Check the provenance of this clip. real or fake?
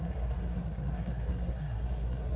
fake